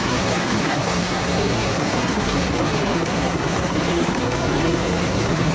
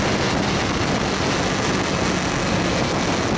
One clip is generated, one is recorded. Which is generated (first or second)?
first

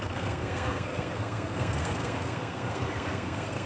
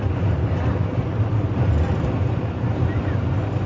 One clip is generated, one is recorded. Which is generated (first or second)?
first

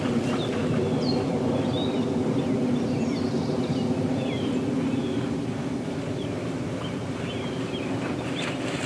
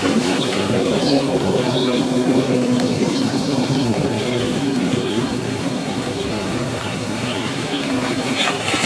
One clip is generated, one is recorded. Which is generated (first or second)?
second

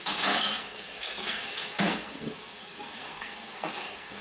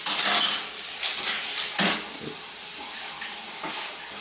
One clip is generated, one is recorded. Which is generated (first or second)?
first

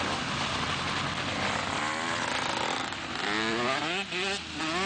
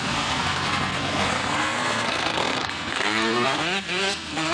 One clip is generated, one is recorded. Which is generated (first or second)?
second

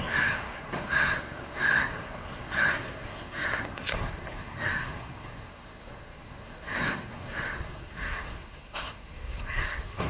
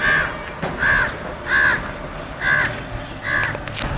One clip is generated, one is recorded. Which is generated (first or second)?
first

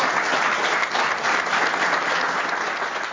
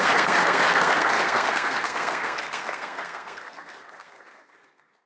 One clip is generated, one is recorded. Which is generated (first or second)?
second